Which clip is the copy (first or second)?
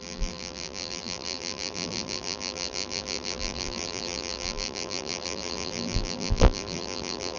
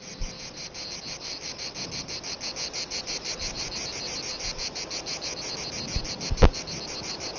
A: first